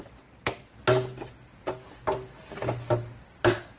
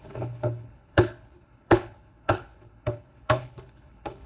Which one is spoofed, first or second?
second